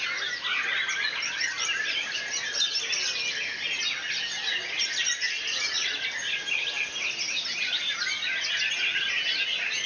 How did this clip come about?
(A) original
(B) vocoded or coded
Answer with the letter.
A